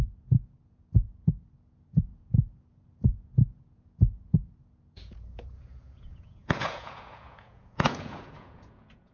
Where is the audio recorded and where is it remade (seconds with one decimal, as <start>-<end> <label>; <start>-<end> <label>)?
0.0-9.1 remade